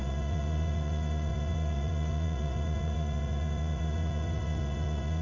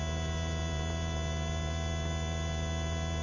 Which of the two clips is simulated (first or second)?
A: first